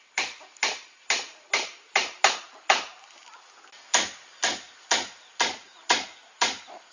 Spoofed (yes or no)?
no